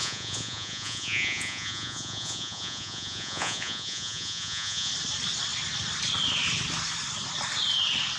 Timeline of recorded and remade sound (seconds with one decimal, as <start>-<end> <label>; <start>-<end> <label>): 0.0-4.9 remade; 4.9-8.2 recorded